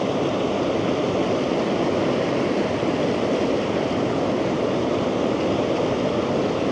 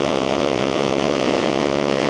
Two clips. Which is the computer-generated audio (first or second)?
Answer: second